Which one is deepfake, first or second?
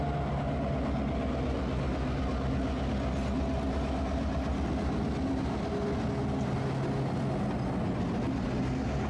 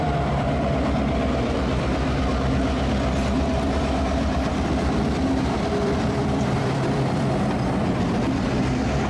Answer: second